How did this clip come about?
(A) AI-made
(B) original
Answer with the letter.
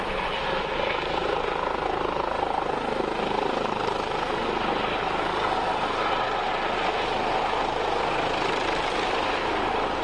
B